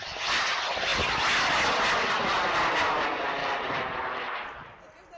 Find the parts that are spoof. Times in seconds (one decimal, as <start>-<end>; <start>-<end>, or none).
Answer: 3.4-4.8